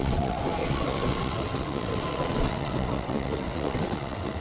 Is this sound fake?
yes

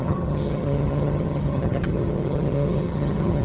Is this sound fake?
yes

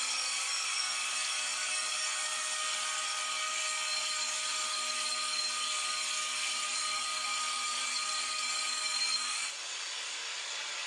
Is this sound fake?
yes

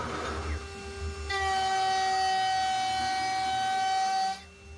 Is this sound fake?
no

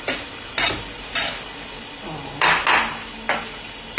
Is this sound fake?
no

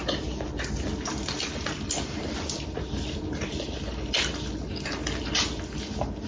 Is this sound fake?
yes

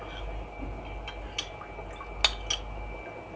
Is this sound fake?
no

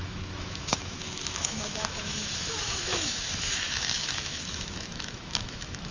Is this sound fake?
yes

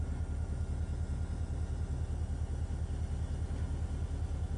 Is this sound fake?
no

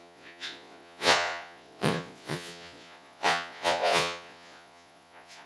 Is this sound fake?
yes